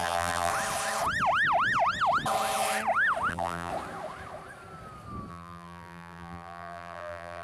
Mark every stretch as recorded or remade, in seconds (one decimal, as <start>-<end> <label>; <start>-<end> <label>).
0.0-0.5 remade; 0.5-3.3 recorded; 3.3-3.7 remade; 3.7-5.3 recorded; 5.3-7.4 remade